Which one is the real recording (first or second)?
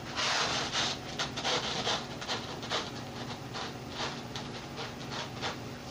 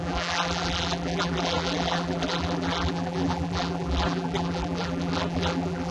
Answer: first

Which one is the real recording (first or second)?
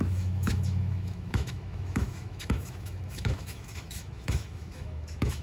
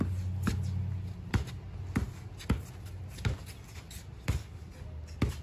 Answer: second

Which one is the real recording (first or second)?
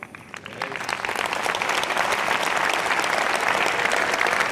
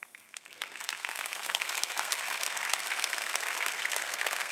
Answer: first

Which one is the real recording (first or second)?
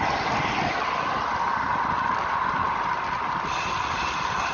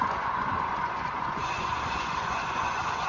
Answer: first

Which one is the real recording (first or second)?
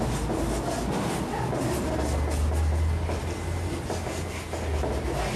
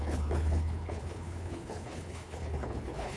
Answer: first